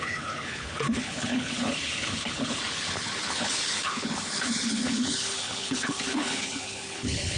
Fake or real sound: fake